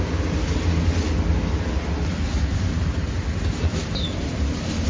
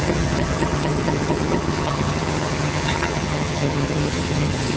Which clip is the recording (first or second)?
first